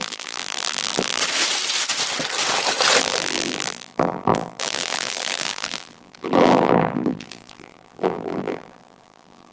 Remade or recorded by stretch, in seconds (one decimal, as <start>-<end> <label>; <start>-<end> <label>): 0.0-1.2 remade; 1.2-3.0 recorded; 3.0-9.5 remade